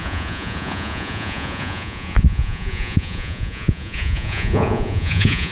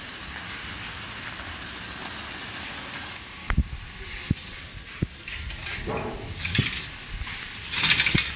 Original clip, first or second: second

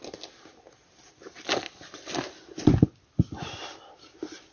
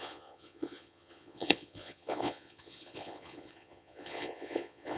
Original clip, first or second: first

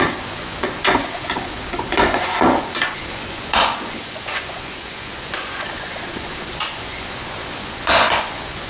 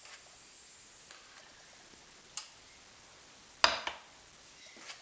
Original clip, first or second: second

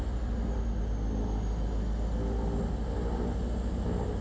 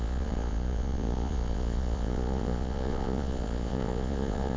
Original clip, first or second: first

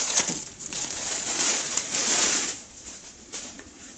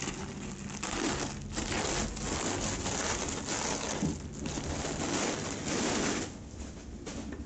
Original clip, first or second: second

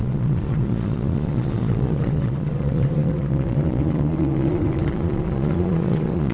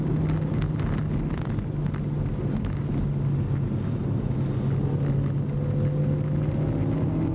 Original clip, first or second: second